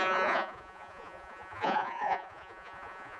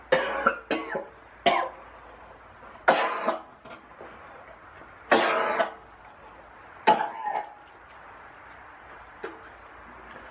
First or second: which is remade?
first